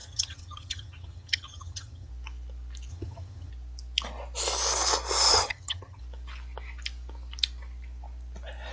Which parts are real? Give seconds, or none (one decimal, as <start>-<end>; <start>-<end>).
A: 2.1-2.9; 3.5-5.3; 6.0-8.7